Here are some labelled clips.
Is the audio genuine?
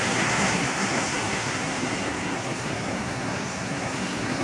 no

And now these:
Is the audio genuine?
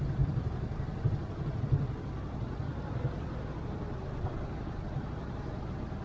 no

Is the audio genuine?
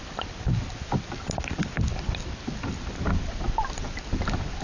yes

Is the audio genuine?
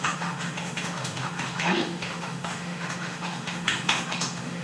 no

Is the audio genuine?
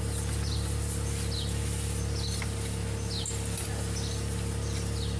yes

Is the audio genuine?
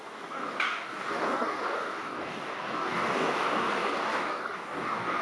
no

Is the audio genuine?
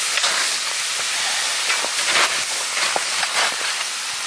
no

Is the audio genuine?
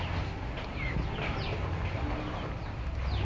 yes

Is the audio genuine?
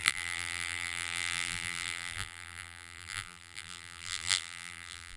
no